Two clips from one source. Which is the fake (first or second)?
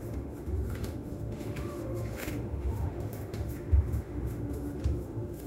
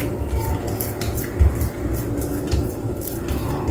first